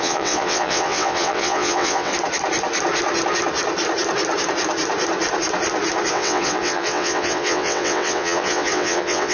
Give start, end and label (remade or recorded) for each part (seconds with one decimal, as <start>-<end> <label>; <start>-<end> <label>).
0.0-2.1 remade; 2.1-6.1 recorded; 6.1-9.3 remade